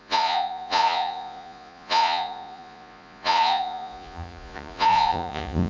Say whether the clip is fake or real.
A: fake